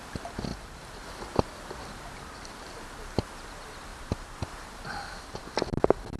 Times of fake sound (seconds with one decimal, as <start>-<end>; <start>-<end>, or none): 3.9-5.4